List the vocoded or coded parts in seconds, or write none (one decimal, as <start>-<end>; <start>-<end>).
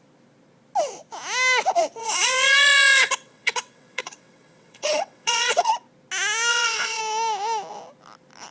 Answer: 2.0-5.7; 6.5-7.0